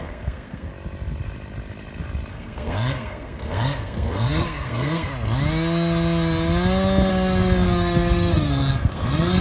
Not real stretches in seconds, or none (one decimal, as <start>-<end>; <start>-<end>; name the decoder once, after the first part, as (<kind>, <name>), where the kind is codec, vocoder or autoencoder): 0.0-0.7 (codec, SNAC); 2.3-5.1; 7.1-9.4

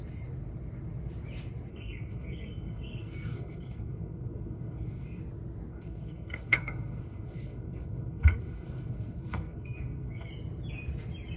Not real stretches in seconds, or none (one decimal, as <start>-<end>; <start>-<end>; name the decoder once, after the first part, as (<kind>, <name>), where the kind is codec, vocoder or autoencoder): 1.7-5.2 (codec, SNAC); 5.7-10.3

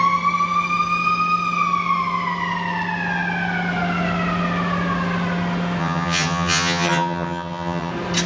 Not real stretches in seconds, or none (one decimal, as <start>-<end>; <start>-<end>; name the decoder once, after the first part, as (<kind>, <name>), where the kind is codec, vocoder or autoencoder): 5.8-7.9 (vocoder, HiFi-GAN)

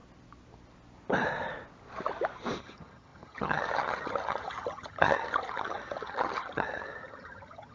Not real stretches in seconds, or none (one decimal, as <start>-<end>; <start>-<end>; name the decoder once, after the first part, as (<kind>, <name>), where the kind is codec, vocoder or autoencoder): 2.6-7.7 (vocoder, HiFi-GAN)

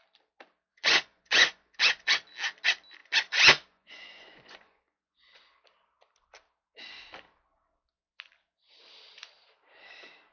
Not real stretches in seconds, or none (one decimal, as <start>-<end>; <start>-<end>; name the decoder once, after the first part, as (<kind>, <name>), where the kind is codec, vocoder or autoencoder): 0.7-2.2 (vocoder, Vocos); 3.0-5.5

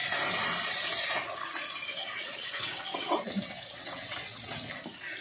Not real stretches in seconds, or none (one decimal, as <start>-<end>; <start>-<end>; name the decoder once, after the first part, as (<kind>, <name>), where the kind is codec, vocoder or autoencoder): 1.9-4.7 (vocoder, WaveNeXt)

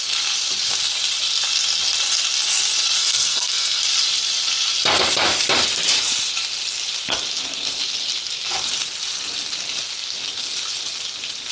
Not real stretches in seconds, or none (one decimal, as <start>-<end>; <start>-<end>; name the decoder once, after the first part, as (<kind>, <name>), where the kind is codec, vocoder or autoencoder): 3.0-3.8 (codec, SNAC)